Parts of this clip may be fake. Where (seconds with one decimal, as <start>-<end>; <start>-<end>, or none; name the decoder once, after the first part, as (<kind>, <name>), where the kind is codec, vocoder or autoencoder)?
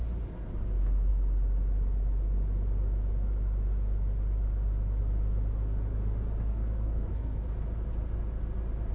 6.5-7.4 (codec, SNAC)